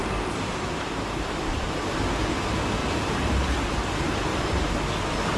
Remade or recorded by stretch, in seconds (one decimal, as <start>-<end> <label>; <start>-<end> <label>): 0.0-1.6 remade; 1.6-2.8 recorded; 2.8-3.5 remade; 3.5-5.4 recorded